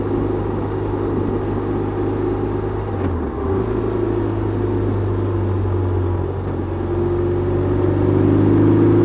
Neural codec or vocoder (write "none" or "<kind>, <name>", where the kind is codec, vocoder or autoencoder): none